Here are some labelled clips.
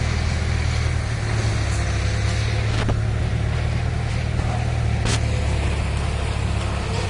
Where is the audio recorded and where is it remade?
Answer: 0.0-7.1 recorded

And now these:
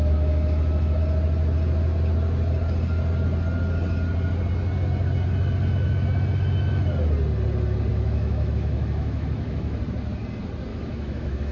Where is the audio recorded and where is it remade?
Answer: 0.0-1.0 remade; 1.0-7.9 recorded; 7.9-9.8 remade; 9.8-10.7 recorded; 10.7-11.5 remade

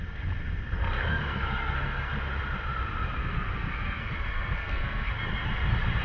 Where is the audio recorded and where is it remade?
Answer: 0.0-1.1 recorded; 1.1-2.1 remade; 2.1-3.2 recorded; 3.2-5.1 remade; 5.1-6.0 recorded

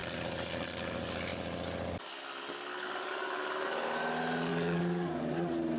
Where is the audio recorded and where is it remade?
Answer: 0.0-2.7 recorded; 2.7-4.0 remade; 4.0-4.5 recorded; 4.5-5.2 remade; 5.2-5.8 recorded

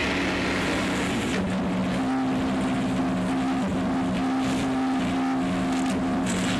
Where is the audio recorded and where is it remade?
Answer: 0.0-6.6 recorded

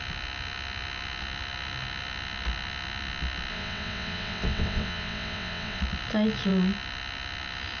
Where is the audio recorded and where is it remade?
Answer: 0.0-3.5 recorded; 3.5-5.8 remade; 5.8-7.8 recorded

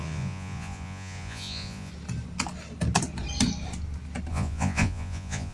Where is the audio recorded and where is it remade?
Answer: 0.0-1.9 remade; 1.9-4.3 recorded; 4.3-5.5 remade

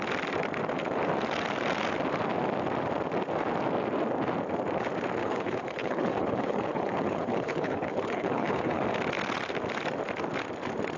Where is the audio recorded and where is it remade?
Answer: 0.0-5.2 recorded; 5.2-8.8 remade; 8.8-11.0 recorded